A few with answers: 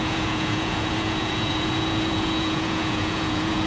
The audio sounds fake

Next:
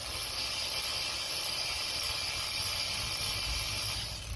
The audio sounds real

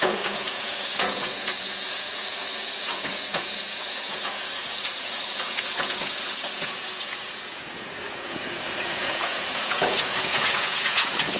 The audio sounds fake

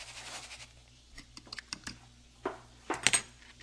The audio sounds real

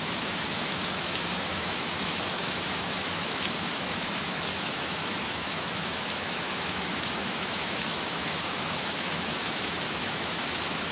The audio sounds fake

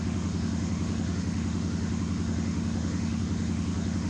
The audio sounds fake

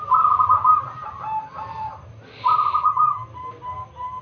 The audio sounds real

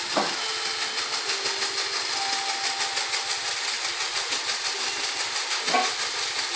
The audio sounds real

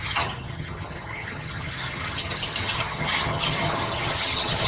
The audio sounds fake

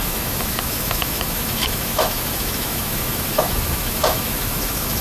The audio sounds fake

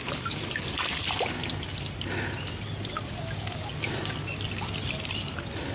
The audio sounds real